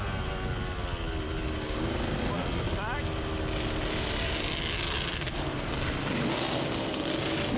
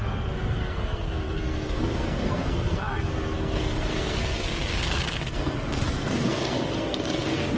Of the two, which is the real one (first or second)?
first